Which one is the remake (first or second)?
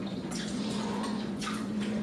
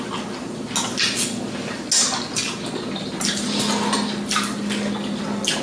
first